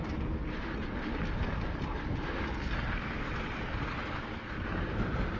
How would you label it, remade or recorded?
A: recorded